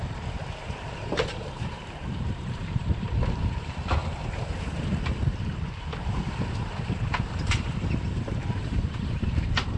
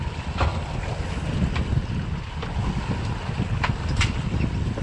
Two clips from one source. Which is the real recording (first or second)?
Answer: second